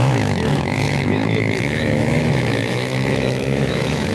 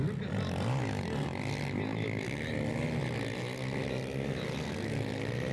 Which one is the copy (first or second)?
first